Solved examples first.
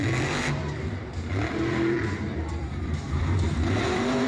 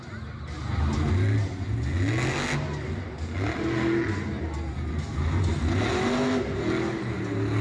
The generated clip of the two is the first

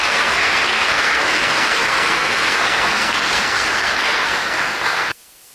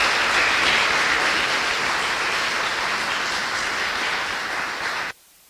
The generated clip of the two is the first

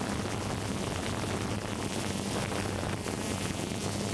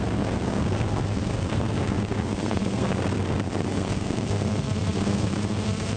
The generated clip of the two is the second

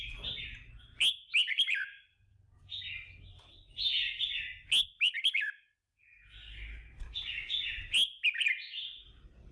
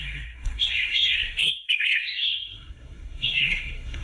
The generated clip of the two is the second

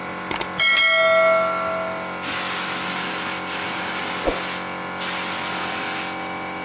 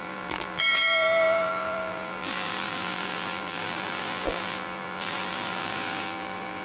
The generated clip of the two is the second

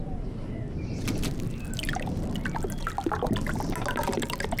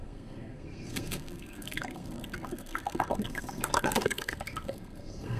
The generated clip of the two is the second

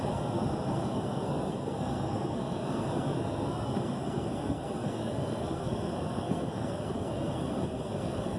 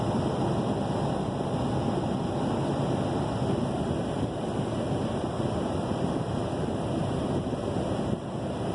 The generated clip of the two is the first